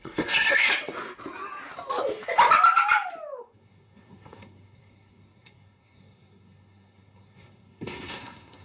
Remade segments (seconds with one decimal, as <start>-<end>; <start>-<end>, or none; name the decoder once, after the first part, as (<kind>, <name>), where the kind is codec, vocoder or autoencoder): 0.0-0.7 (codec, SNAC); 3.4-8.6